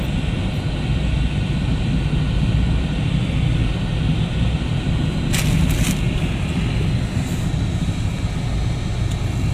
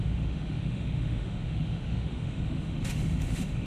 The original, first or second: first